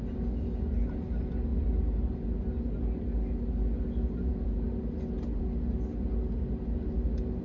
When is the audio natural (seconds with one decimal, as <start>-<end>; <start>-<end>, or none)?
0.0-7.4